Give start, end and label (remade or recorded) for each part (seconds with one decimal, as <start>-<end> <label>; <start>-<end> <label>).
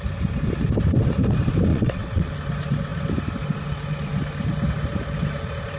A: 0.0-1.7 recorded; 1.7-2.3 remade; 2.3-5.8 recorded